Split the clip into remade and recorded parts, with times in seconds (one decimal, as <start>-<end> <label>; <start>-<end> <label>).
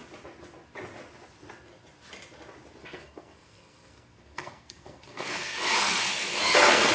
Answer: 0.0-2.8 recorded; 2.8-6.9 remade